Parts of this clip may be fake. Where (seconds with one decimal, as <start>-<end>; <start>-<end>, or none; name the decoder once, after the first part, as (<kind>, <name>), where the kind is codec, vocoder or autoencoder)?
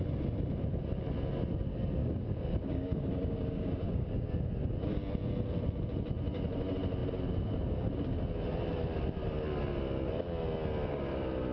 2.0-4.3 (codec, DAC)